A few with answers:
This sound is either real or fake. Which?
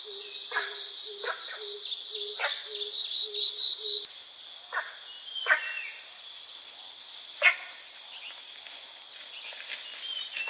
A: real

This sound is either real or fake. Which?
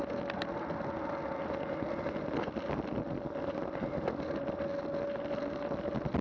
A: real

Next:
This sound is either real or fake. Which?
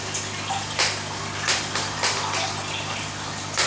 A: real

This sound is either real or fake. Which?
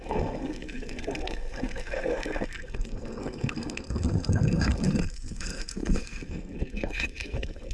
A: fake